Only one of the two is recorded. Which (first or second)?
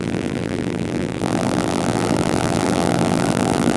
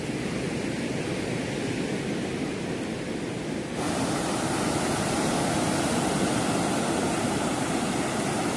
second